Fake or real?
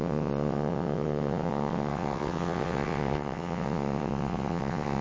fake